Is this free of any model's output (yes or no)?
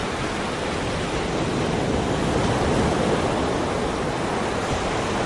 yes